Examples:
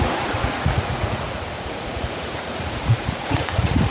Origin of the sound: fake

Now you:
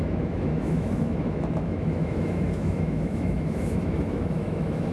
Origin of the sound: fake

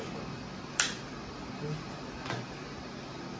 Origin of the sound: real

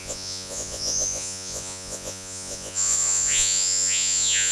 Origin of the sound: fake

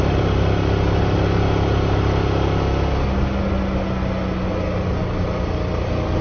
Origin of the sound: real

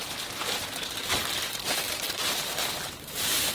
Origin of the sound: fake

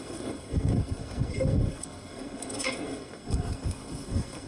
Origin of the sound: fake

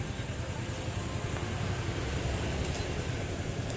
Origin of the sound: real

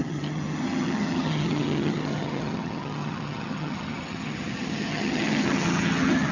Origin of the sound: fake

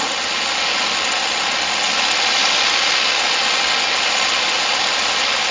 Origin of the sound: real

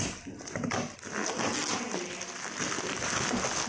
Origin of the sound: real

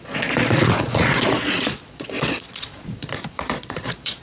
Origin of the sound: fake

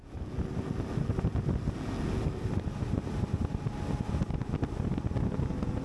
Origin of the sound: real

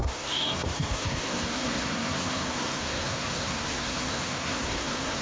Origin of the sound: fake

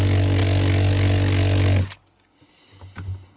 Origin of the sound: real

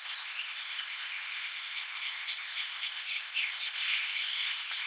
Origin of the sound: fake